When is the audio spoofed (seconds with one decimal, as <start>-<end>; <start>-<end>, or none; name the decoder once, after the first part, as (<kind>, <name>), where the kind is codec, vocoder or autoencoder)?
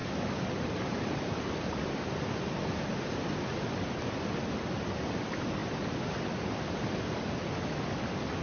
none